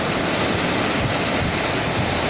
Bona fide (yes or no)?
yes